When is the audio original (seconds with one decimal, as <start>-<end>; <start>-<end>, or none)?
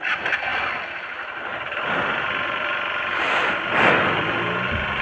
0.0-5.0